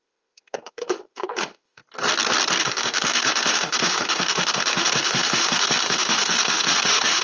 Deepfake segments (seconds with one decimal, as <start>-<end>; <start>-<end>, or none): 0.0-1.8; 2.6-7.2